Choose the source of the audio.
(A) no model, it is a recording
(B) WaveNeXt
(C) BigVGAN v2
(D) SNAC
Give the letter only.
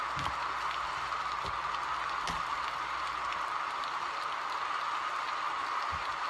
A